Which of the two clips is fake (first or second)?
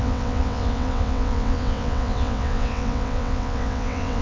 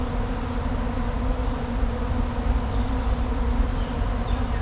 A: first